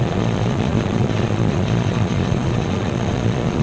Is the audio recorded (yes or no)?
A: no